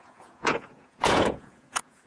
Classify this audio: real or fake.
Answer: fake